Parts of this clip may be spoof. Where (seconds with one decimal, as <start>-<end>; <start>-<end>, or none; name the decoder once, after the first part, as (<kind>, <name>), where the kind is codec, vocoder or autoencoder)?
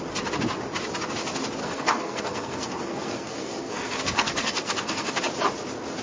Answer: 1.6-5.2 (codec, SNAC)